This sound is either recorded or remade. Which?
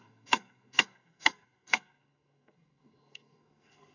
remade